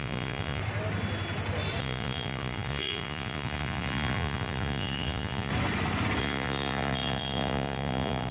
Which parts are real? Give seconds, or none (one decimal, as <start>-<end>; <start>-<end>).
0.6-1.8; 5.5-6.2